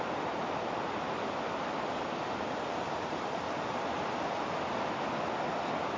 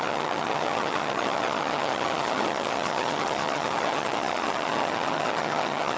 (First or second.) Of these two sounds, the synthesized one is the second